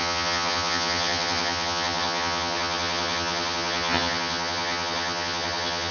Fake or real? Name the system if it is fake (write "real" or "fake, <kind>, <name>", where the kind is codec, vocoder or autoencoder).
fake, vocoder, HiFi-GAN